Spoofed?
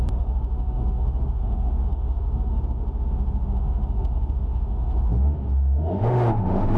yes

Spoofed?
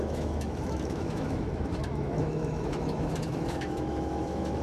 yes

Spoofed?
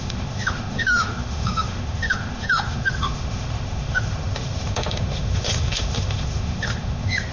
yes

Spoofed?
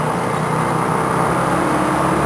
no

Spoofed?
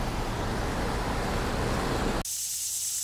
no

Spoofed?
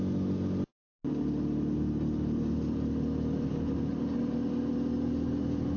no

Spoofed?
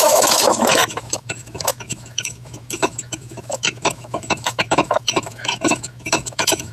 yes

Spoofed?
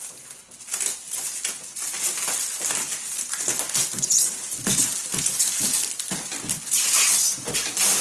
no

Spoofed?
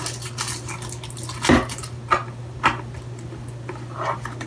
no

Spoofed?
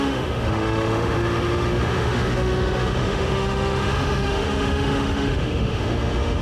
yes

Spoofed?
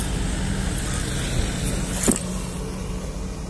no